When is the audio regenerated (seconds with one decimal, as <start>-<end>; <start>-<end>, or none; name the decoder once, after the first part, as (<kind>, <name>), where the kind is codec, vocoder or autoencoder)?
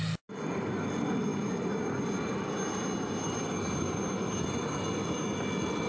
none